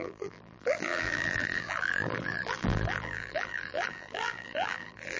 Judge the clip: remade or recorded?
remade